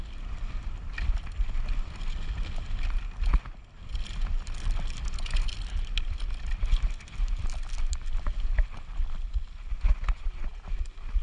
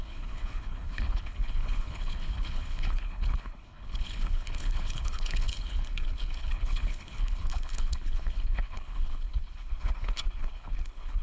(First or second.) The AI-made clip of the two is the second